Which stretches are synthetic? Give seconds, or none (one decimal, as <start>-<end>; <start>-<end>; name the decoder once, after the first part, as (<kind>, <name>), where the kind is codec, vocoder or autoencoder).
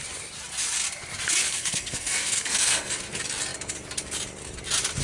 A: 1.4-2.9 (codec, SNAC)